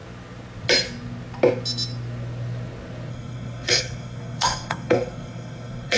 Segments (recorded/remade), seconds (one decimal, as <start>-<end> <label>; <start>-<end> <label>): 0.0-3.1 recorded; 3.1-6.0 remade